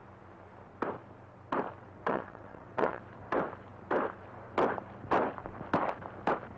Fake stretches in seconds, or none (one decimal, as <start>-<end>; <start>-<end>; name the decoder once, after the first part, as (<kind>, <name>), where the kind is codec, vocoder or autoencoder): 2.1-3.0 (vocoder, WaveNeXt)